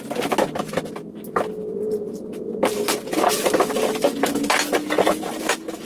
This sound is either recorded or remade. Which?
recorded